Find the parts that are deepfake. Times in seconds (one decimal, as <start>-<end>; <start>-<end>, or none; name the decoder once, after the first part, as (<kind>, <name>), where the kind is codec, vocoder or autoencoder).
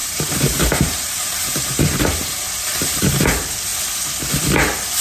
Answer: 0.0-3.0 (vocoder, BigVGAN v2)